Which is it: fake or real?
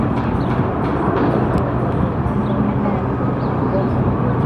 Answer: fake